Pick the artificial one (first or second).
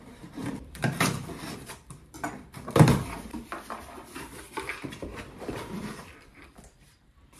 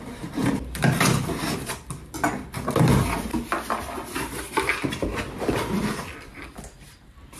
first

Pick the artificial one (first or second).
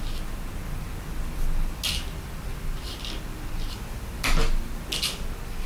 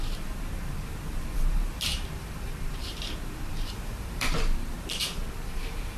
second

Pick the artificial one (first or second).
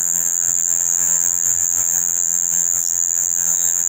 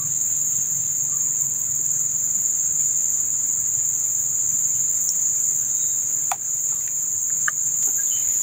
first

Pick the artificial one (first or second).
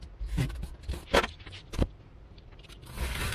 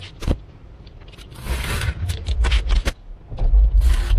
second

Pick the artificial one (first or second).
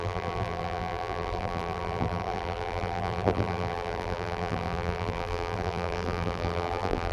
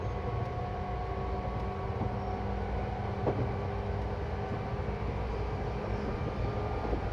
first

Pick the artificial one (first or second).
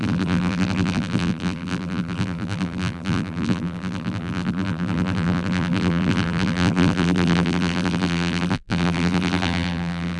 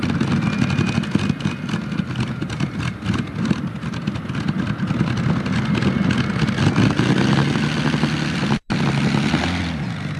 first